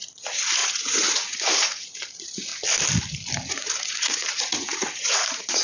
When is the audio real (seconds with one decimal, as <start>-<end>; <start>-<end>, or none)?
2.5-3.5